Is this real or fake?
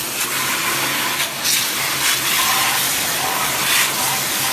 real